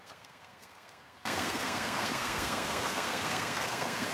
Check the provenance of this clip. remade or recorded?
remade